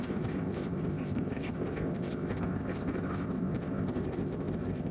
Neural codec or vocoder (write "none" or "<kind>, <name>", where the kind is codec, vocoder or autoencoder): codec, ZipCodec